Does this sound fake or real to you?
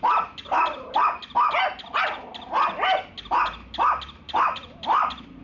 real